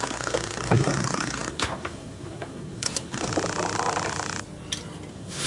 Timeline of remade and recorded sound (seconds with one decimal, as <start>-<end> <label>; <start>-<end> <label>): 0.0-3.3 remade; 3.3-5.1 recorded; 5.1-5.5 remade